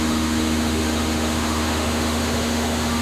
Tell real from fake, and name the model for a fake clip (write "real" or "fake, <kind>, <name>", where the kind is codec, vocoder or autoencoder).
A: fake, autoencoder, DAC-VAE